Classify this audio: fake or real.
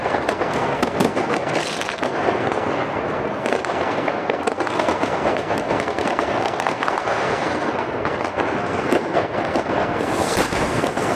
fake